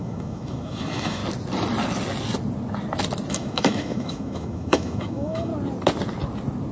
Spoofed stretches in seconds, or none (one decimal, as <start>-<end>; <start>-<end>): 0.0-1.2; 3.3-5.5